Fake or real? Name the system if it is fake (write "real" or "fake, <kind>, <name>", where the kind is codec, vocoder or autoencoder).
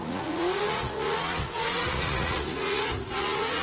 fake, vocoder, Vocos